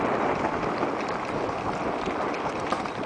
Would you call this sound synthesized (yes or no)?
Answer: no